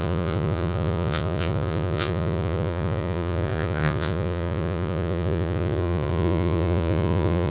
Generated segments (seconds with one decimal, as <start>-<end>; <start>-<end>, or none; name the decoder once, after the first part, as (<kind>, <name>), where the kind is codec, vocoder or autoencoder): 0.0-7.5 (vocoder, Vocos)